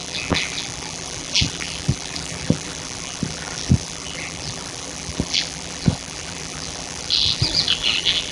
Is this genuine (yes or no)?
no